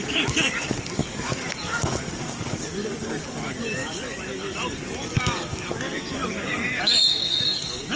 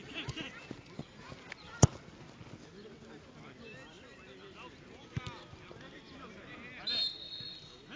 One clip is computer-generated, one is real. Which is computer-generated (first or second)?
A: first